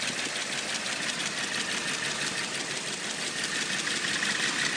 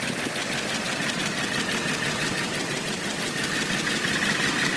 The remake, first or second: second